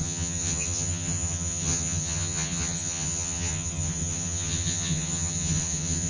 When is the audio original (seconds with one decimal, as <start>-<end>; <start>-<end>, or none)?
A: none